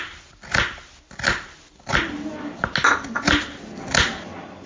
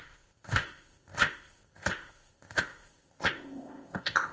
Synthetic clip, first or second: second